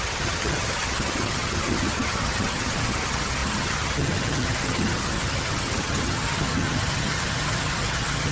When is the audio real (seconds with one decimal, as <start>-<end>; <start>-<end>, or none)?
none

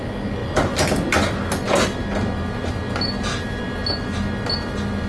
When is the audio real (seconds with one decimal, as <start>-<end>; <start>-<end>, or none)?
0.0-5.1

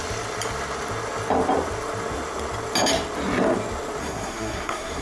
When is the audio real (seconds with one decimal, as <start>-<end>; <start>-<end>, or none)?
0.0-4.0

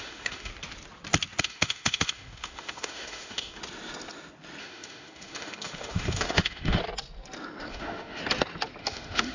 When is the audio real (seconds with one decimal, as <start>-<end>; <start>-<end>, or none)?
0.5-1.4; 3.6-4.6; 6.8-7.7; 8.2-8.8

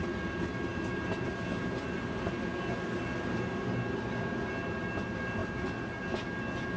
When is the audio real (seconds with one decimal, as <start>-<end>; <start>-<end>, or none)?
0.0-6.8

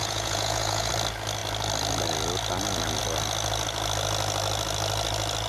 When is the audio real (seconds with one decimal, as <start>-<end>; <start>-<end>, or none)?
0.9-5.5

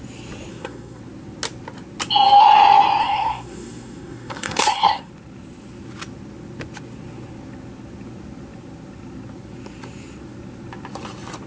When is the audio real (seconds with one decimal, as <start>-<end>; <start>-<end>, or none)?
0.0-0.5; 1.0-3.0; 5.1-11.5